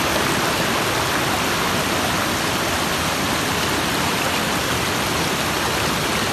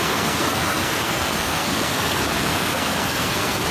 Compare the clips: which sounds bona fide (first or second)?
first